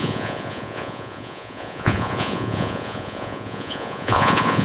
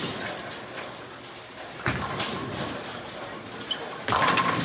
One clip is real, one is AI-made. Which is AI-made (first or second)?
first